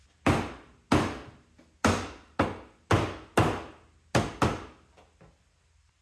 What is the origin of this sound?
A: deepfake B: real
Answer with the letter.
B